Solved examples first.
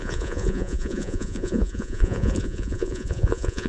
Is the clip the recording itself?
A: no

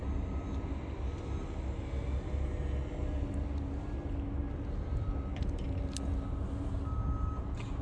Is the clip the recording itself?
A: yes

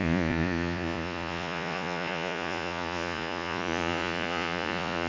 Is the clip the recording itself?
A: no